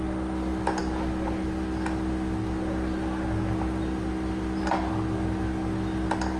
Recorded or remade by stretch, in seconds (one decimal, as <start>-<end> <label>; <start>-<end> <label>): 0.0-6.4 recorded